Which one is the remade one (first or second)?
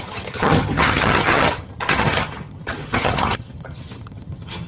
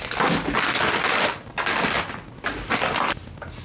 first